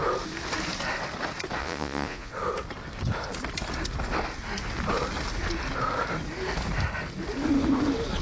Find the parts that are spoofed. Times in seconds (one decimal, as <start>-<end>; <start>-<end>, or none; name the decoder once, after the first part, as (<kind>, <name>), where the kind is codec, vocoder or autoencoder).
1.6-2.3 (vocoder, Vocos)

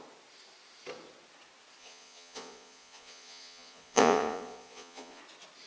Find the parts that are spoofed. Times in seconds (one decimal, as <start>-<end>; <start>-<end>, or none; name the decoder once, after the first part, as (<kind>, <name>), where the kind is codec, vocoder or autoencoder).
1.8-5.2 (vocoder, Vocos)

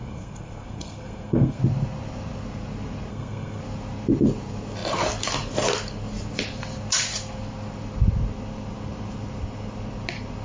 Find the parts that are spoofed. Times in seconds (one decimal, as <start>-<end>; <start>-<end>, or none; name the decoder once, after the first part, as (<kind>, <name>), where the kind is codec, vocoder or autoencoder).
0.0-1.6 (codec, SNAC); 3.1-3.6

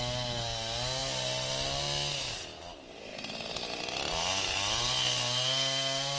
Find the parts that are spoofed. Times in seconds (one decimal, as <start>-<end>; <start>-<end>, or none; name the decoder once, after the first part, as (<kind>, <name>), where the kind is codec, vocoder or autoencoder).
none

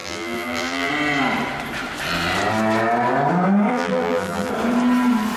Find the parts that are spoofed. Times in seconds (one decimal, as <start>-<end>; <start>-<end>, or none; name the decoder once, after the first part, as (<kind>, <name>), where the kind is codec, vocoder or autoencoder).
0.0-0.9 (vocoder, BigVGAN v2); 3.7-4.5

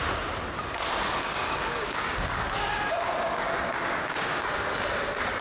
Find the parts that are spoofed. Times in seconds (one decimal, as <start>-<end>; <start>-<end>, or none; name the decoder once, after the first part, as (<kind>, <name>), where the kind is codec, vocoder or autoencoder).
1.2-4.4 (codec, DAC)

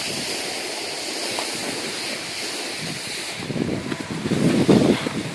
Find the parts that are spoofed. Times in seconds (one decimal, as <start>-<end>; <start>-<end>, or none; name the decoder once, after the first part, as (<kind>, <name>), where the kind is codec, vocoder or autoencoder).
none

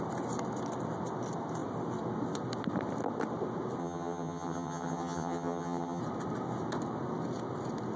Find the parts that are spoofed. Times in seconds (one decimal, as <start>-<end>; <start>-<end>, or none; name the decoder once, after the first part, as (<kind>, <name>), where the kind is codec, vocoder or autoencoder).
3.8-6.0 (vocoder, HiFi-GAN)